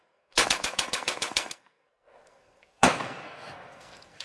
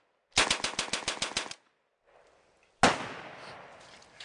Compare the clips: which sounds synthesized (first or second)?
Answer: first